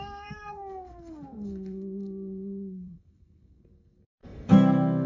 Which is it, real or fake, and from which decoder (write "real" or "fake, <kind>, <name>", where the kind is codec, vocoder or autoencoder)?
fake, codec, SNAC